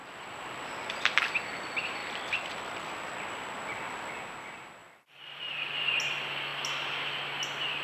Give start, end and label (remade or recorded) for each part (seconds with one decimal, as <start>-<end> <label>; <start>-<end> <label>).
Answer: 0.0-1.2 remade; 1.2-2.0 recorded; 2.0-4.1 remade; 4.1-4.8 recorded; 4.8-6.0 remade; 6.0-7.8 recorded